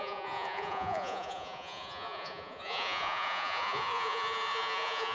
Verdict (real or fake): fake